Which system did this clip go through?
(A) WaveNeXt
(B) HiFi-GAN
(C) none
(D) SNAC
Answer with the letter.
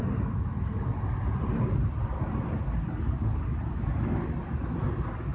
C